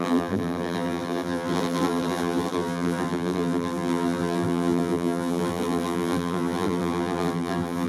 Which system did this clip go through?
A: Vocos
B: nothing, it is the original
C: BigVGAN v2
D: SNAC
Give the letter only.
C